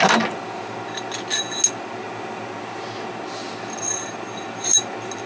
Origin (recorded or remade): recorded